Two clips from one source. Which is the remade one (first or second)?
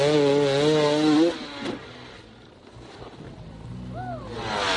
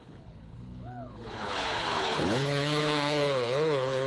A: second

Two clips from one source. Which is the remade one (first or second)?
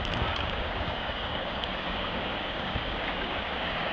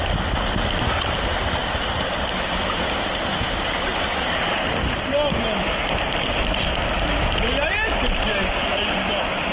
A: first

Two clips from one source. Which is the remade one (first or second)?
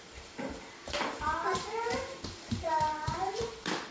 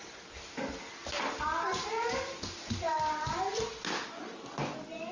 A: first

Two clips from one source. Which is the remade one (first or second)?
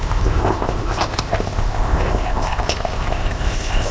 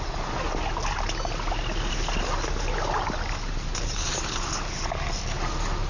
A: first